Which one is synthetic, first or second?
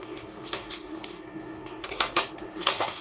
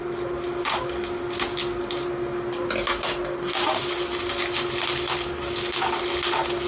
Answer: first